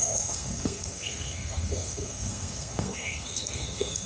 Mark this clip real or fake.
fake